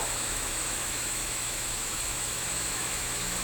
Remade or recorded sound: remade